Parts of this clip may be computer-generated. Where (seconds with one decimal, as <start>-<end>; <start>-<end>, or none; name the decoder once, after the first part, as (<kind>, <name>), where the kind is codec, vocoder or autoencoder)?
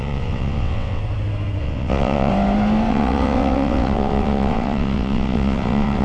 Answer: 0.0-1.0 (vocoder, WaveNeXt); 1.6-2.3; 2.9-6.0